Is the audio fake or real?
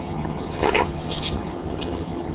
fake